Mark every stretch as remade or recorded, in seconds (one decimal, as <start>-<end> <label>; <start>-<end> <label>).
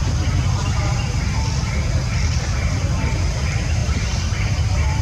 0.0-3.0 recorded; 3.0-5.0 remade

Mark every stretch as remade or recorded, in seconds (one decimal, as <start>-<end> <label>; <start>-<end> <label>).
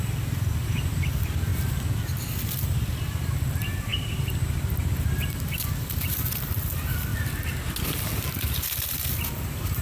0.0-1.5 remade; 1.5-2.8 recorded; 2.8-3.9 remade; 3.9-5.8 recorded; 5.8-7.1 remade; 7.1-8.3 recorded; 8.3-9.8 remade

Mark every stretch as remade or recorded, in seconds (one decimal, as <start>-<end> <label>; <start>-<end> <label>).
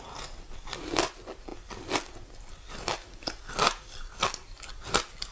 0.0-5.3 recorded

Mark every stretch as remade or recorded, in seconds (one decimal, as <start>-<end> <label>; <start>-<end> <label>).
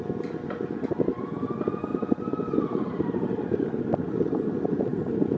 0.0-1.9 recorded; 1.9-5.4 remade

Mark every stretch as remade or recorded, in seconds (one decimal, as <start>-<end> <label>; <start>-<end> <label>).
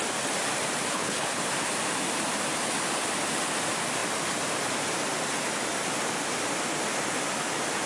0.0-0.9 recorded; 0.9-1.4 remade; 1.4-7.9 recorded